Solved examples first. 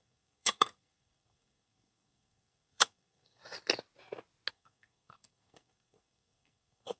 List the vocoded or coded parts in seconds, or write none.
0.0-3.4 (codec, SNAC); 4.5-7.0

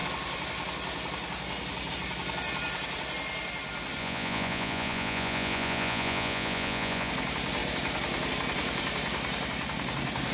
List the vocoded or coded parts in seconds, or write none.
4.0-7.1 (vocoder, Vocos)

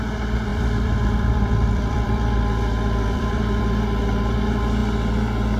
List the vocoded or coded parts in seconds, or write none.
0.5-3.6 (vocoder, BigVGAN v2)